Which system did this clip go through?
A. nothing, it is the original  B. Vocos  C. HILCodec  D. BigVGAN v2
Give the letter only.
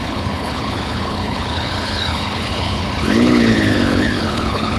C